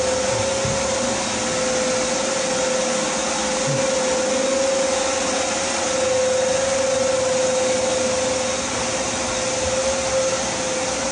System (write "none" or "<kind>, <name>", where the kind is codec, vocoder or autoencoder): none